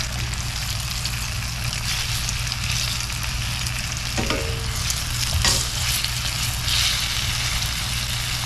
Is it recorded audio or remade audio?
recorded